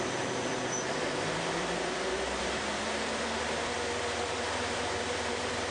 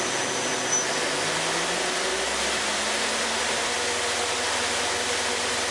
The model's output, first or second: first